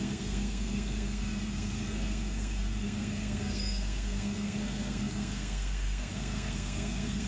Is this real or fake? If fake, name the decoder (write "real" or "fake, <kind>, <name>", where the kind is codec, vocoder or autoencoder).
fake, codec, SNAC